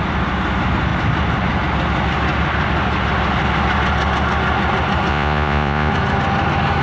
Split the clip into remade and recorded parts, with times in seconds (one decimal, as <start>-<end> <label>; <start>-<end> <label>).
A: 0.0-5.1 recorded; 5.1-5.9 remade; 5.9-6.8 recorded